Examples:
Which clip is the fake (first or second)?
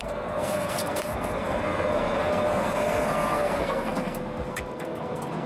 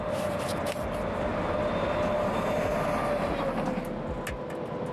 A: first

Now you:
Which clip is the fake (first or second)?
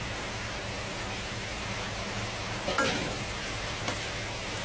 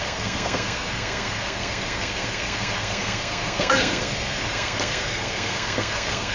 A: second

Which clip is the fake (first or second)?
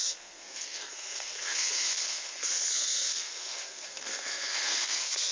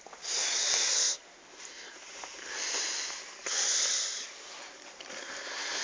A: first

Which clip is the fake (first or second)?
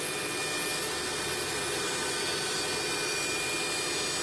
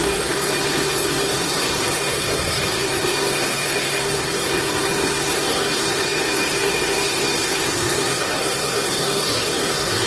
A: second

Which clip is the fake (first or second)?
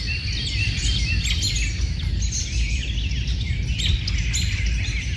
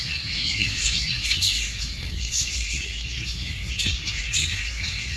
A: second